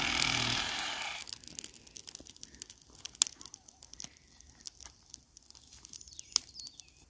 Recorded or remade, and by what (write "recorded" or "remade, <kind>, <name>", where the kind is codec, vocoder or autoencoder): recorded